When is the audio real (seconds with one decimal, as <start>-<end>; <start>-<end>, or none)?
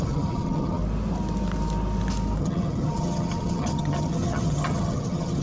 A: 0.8-2.4